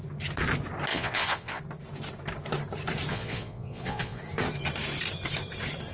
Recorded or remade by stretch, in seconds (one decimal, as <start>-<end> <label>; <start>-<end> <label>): 0.0-0.9 recorded; 0.9-1.6 remade; 1.6-3.1 recorded; 3.1-4.2 remade; 4.2-5.9 recorded